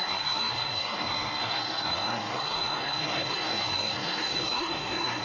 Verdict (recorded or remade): remade